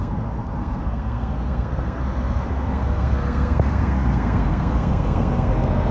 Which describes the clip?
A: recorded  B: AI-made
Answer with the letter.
B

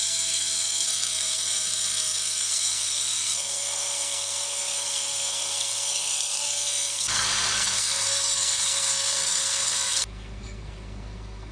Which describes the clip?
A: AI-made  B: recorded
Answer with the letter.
A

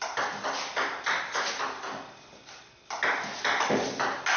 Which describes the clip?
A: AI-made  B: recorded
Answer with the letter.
B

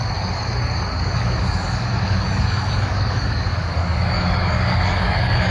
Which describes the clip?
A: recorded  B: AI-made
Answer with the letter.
B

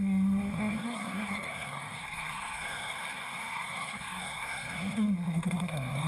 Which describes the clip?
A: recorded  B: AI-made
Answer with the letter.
B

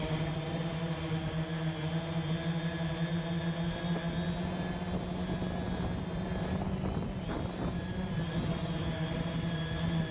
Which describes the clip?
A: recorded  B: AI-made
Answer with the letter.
A